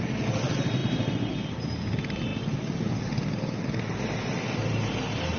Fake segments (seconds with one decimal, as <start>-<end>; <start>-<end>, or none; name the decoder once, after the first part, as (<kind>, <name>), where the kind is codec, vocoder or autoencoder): none